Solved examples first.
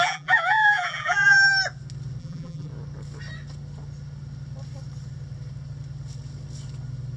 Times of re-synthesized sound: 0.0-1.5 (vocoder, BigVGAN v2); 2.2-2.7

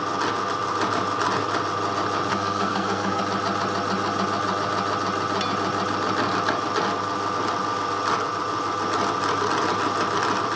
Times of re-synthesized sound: 2.3-3.2 (codec, SNAC)

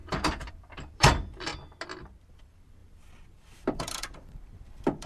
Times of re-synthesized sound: 0.0-1.5 (vocoder, BigVGAN v2); 2.3-5.1

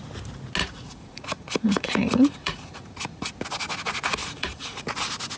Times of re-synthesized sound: 0.6-3.3 (vocoder, Vocos); 4.2-4.8

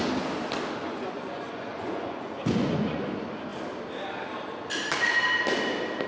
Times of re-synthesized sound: 0.8-3.0 (vocoder, Vocos)